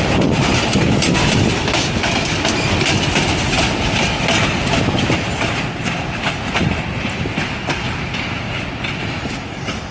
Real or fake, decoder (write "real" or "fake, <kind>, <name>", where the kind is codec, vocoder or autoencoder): real